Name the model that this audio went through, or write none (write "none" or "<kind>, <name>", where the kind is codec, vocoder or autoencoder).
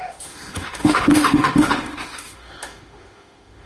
autoencoder, DAC-VAE